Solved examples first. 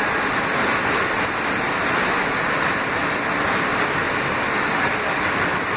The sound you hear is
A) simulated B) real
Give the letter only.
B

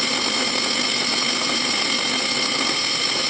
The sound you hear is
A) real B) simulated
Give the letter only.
A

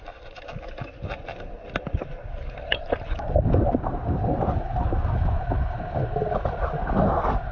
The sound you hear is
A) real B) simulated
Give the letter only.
A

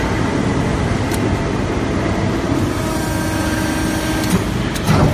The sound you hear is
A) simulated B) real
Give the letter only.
B